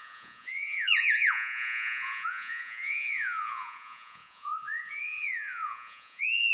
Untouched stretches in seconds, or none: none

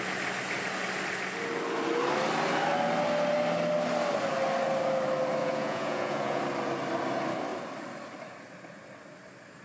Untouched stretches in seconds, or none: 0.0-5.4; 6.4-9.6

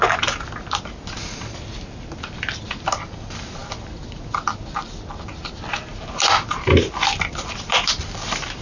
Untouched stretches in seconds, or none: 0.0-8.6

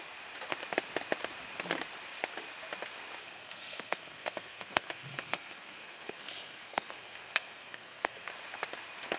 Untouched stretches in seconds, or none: 0.0-3.2; 8.3-9.2